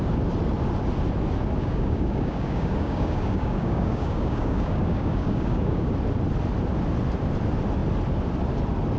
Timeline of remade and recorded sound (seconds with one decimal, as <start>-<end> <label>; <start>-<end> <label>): 0.0-1.6 recorded; 1.6-5.9 remade; 5.9-9.0 recorded

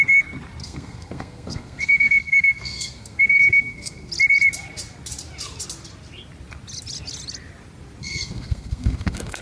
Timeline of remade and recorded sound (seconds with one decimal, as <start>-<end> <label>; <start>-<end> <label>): 0.0-0.6 recorded; 0.6-4.1 remade; 4.1-8.0 recorded; 8.0-9.4 remade

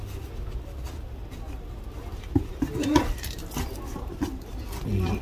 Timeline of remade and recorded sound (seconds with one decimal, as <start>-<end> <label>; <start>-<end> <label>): 0.0-5.2 recorded